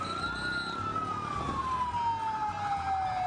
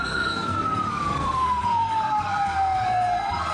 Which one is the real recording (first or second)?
first